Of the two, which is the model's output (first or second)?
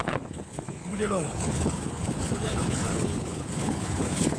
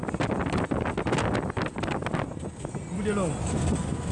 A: first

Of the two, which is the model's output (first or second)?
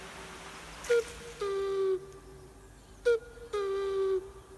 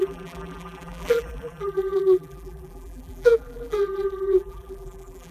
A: second